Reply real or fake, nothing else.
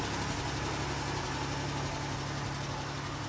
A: real